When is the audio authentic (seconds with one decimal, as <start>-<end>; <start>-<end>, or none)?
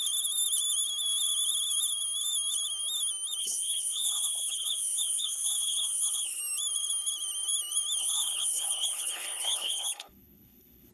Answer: 0.0-3.4; 6.4-8.0